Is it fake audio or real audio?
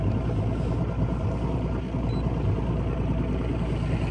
real